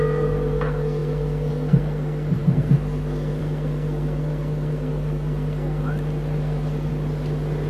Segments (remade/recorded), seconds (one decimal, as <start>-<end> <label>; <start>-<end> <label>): 0.0-5.8 remade; 5.8-6.4 recorded; 6.4-6.9 remade; 6.9-7.7 recorded